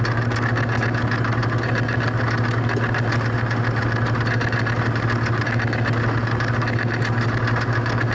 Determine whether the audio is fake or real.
real